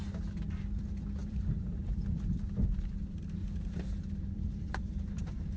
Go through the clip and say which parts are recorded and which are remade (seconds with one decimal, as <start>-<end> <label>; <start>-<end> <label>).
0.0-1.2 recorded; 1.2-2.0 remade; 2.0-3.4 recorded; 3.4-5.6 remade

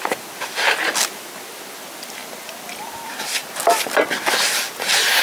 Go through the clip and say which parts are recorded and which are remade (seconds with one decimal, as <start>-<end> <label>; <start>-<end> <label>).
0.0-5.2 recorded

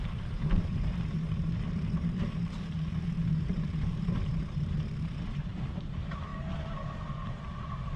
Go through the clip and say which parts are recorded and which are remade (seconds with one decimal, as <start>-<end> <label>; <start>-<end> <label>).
0.0-8.0 remade

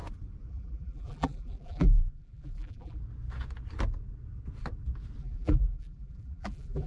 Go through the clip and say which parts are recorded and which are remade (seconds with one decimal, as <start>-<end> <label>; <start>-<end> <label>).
0.0-0.5 recorded; 0.5-3.0 remade; 3.0-5.2 recorded; 5.2-6.9 remade

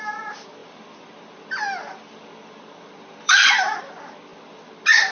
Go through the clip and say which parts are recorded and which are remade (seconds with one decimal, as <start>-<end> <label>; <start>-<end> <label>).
0.0-0.6 recorded; 0.6-3.5 remade; 3.5-5.1 recorded

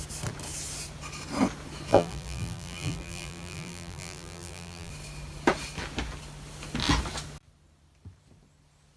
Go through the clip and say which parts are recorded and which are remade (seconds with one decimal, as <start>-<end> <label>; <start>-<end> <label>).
0.0-1.9 recorded; 1.9-4.9 remade; 4.9-9.0 recorded

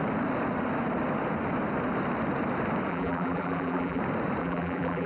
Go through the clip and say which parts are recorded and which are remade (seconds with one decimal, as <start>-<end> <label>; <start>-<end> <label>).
0.0-2.9 recorded; 2.9-4.0 remade; 4.0-4.4 recorded; 4.4-5.1 remade